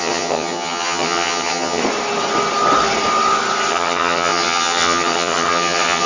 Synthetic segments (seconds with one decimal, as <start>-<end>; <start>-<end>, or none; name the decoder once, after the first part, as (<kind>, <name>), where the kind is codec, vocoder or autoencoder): 0.0-1.8 (vocoder, HiFi-GAN); 3.7-6.1